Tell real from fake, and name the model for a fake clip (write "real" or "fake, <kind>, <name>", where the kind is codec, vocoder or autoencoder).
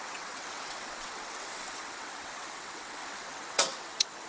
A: fake, vocoder, WaveNeXt